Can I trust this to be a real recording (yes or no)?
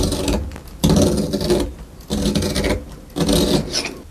yes